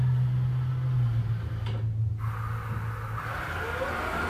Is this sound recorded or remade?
recorded